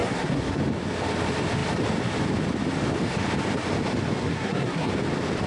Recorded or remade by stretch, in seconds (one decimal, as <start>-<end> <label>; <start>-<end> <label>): 0.0-0.6 remade; 0.6-4.2 recorded; 4.2-4.9 remade; 4.9-5.5 recorded